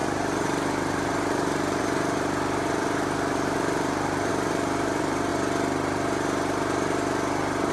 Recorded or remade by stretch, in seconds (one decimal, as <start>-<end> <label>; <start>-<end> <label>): 0.0-5.3 remade; 5.3-7.7 recorded